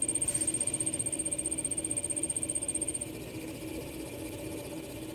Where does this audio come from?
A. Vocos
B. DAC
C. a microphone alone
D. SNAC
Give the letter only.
C